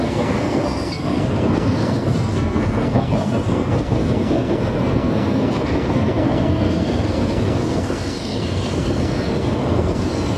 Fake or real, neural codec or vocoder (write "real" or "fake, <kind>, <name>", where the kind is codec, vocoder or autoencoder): fake, codec, SNAC